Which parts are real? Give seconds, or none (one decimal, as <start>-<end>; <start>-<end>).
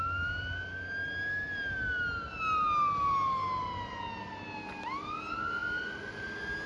0.0-6.7